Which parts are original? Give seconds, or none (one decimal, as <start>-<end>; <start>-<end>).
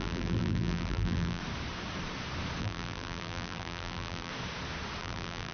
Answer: 1.4-2.6; 4.3-5.0